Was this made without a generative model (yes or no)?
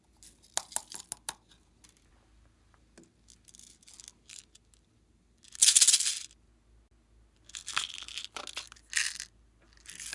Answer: yes